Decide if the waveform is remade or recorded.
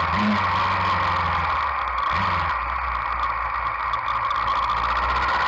recorded